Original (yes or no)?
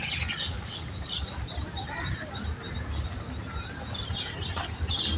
yes